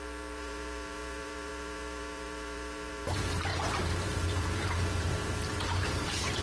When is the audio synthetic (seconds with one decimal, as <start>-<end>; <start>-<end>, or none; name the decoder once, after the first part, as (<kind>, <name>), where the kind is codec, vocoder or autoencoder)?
0.0-6.4 (vocoder, BigVGAN v2)